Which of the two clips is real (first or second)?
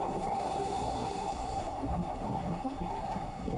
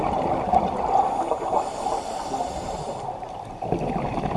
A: second